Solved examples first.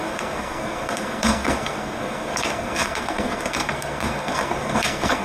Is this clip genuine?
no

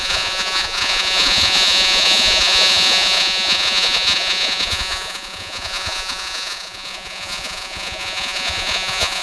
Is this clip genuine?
no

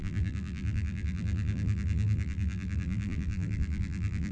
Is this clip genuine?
no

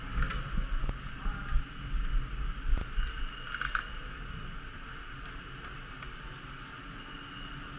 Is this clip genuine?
yes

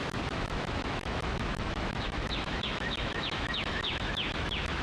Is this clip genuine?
no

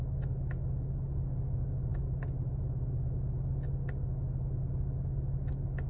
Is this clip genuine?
yes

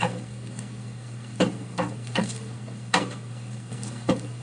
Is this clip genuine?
no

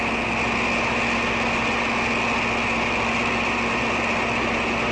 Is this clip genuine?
yes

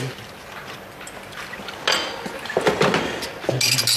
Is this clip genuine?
yes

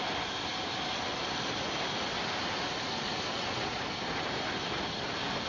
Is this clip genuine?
yes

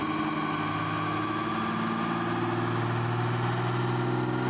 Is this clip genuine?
yes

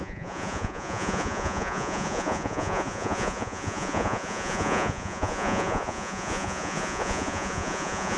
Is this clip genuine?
no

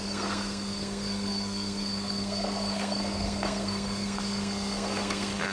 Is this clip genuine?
no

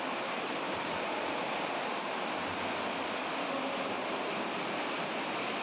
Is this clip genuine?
yes